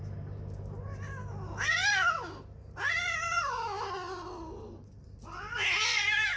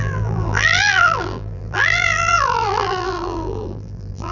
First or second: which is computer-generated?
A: second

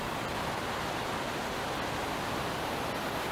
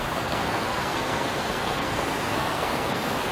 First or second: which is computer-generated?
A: second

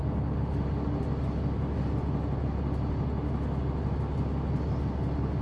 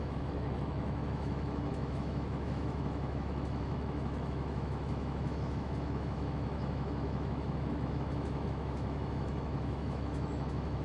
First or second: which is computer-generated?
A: second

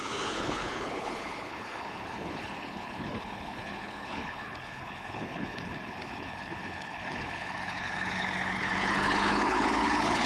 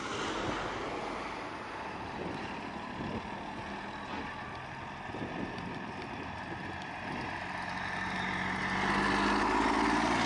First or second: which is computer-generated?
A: first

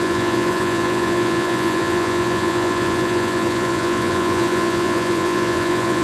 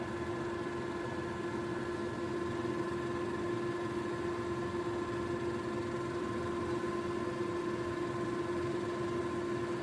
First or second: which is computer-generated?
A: first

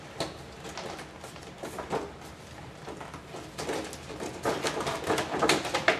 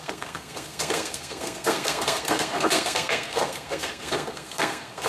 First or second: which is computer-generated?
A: second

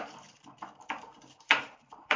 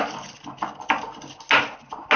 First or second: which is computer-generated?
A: first